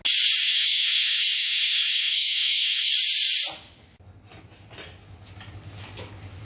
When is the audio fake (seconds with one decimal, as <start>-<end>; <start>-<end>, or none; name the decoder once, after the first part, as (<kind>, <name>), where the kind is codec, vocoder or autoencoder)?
0.4-2.9 (autoencoder, DAC-VAE)